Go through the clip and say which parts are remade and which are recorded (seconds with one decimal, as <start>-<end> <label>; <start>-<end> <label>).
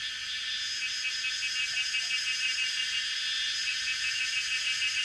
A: 0.0-3.7 recorded; 3.7-4.2 remade; 4.2-5.0 recorded